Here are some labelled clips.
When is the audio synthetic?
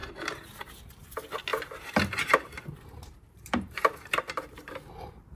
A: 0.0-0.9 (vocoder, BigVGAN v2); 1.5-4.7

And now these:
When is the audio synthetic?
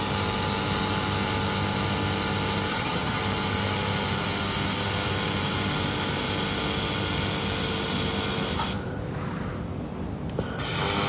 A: 2.7-3.2 (vocoder, HiFi-GAN)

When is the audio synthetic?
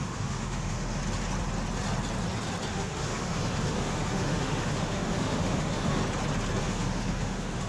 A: 0.0-1.0 (autoencoder, DAC-VAE); 2.7-6.0; 6.6-7.7